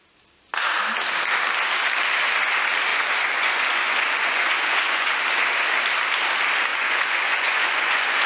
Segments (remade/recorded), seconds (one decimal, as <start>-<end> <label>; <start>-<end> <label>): 0.0-2.9 recorded; 2.9-5.2 remade; 5.2-6.7 recorded; 6.7-8.3 remade